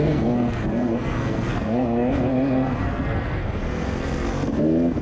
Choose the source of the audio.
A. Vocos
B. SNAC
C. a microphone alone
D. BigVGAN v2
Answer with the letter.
B